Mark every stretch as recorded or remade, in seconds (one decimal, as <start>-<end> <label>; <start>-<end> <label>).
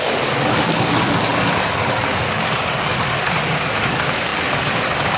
0.0-5.2 remade